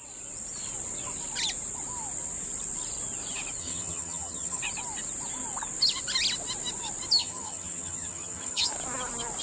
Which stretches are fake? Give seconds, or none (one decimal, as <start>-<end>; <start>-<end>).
3.6-4.6; 7.2-8.7

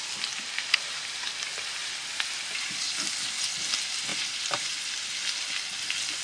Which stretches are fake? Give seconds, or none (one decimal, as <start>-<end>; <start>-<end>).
1.8-3.0; 4.1-4.7

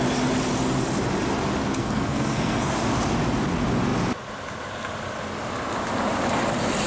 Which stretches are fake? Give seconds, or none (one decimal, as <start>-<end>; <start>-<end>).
1.8-2.7

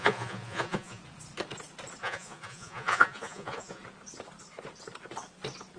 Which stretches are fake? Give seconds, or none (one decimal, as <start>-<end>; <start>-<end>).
0.0-1.0; 2.0-3.8

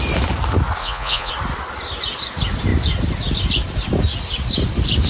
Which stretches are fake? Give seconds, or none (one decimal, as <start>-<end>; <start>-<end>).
0.8-1.3